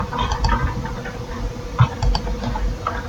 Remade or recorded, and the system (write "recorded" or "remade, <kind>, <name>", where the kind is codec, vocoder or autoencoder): recorded